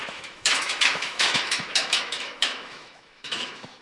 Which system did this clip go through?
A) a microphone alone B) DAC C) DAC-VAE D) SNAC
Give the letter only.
C